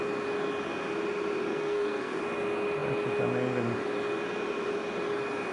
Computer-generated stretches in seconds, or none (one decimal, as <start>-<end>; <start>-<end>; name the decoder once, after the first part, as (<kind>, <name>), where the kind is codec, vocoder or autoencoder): 1.5-2.2 (codec, SNAC)